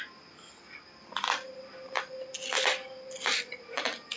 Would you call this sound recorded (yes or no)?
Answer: yes